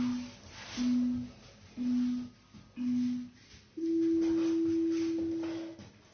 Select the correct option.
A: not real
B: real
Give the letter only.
B